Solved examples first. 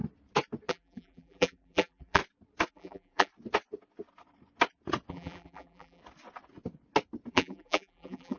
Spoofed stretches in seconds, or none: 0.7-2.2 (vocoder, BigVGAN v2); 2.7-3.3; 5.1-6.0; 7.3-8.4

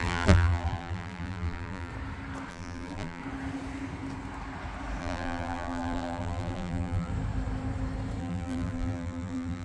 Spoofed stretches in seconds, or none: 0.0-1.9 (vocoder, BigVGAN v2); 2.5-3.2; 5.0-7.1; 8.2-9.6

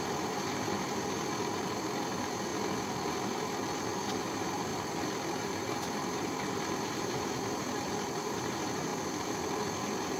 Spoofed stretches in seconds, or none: 0.0-2.5 (vocoder, BigVGAN v2); 4.2-4.7; 5.4-8.9